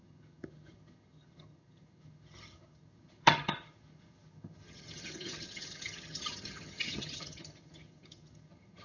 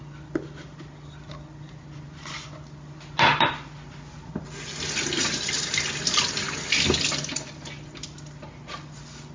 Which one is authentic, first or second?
second